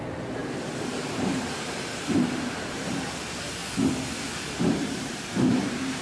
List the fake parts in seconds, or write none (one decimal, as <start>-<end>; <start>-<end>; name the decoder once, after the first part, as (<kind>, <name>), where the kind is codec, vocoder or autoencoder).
0.0-0.4 (vocoder, BigVGAN v2); 1.1-3.6; 4.7-6.0